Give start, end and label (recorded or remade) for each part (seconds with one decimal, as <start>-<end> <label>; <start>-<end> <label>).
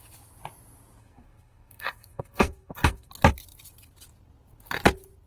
0.0-1.0 recorded; 1.0-3.1 remade; 3.1-5.3 recorded